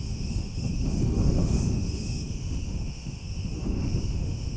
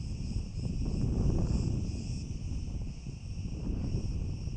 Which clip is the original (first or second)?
second